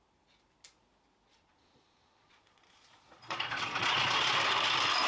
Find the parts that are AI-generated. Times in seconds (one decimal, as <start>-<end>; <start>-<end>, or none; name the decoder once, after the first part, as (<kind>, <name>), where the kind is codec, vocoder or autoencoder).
1.3-4.4 (vocoder, Vocos)